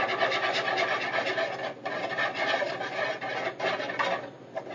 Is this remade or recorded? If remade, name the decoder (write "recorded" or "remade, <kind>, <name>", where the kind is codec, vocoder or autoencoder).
recorded